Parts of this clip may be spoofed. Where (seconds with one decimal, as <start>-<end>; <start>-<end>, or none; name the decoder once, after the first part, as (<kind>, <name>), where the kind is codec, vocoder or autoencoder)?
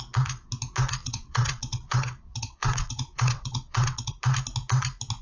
1.0-4.1 (vocoder, WaveNeXt)